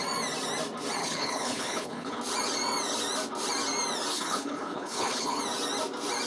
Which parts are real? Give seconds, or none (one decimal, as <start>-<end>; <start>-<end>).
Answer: 0.0-1.0; 2.2-4.1; 5.4-6.3

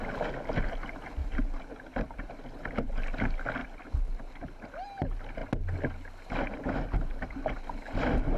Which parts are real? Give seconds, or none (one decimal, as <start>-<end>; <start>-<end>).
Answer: 0.0-1.2; 2.3-3.6; 4.4-8.4

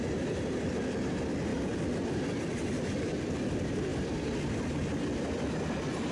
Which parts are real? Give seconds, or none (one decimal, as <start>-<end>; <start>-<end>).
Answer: 0.0-1.5; 3.5-3.9; 4.7-6.1